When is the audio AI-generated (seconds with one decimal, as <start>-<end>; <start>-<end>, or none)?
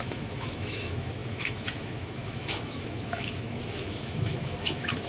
0.0-5.1